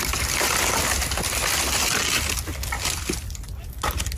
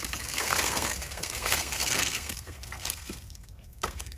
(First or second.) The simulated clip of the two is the second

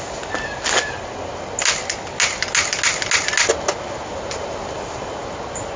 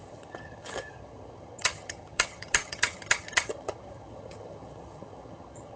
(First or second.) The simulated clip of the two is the second